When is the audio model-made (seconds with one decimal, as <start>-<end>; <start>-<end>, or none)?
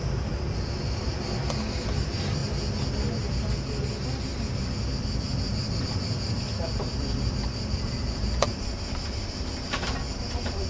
0.0-2.4; 5.8-10.7